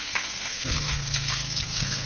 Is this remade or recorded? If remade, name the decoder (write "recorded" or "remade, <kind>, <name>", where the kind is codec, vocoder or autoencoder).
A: remade, codec, SNAC